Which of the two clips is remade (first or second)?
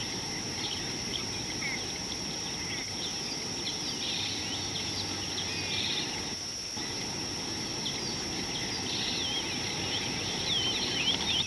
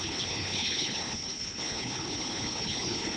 second